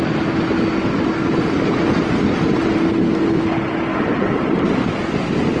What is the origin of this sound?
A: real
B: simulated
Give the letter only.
A